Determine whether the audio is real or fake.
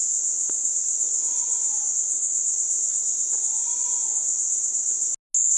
real